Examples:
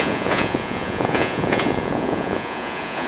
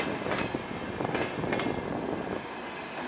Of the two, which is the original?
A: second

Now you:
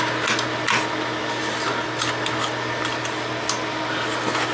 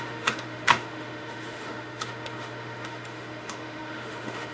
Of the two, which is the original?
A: first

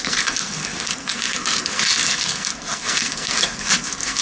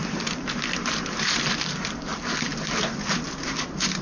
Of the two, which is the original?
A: second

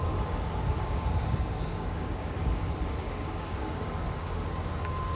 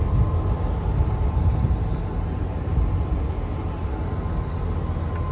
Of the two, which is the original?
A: second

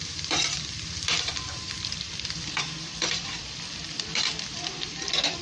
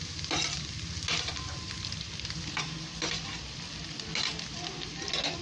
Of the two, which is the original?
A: second